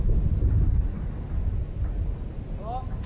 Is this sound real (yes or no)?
yes